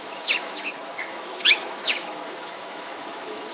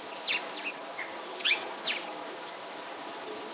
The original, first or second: second